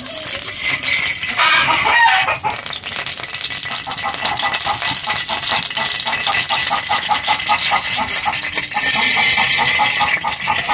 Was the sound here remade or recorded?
recorded